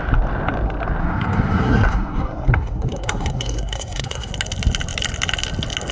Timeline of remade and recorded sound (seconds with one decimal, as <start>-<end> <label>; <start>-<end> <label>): 0.0-1.0 recorded; 1.0-4.3 remade; 4.3-5.9 recorded